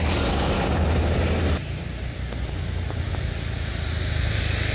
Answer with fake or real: real